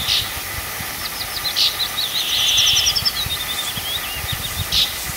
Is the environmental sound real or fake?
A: real